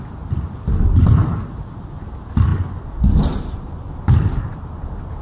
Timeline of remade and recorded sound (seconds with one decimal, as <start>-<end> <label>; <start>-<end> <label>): 0.0-5.2 recorded